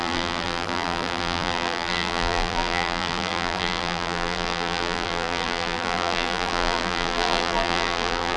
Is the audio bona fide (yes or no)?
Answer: no